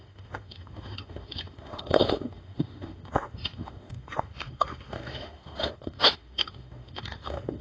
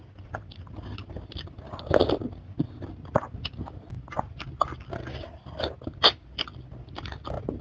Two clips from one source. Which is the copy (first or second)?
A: first